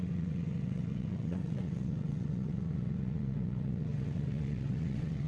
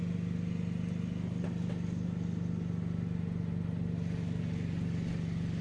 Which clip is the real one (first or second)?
second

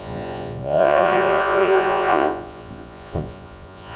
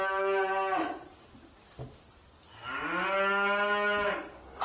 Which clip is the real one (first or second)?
second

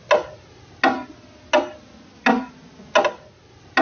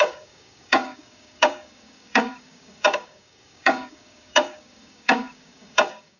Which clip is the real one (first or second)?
first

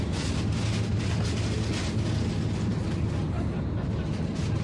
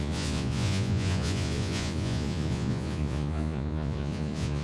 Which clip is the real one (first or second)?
first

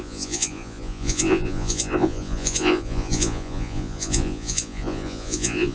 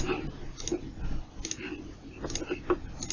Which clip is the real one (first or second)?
second